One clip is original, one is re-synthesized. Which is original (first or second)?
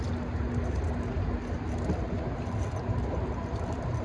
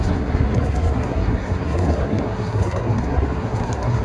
first